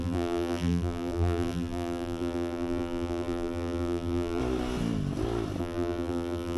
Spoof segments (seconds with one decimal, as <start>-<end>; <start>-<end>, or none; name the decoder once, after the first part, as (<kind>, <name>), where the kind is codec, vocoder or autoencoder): 0.0-4.4 (vocoder, BigVGAN v2); 5.6-6.6